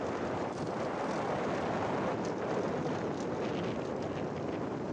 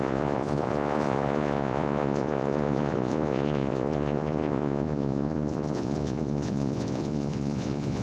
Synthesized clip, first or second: second